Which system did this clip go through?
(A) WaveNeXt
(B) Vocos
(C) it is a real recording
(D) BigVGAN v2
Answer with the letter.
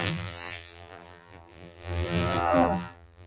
D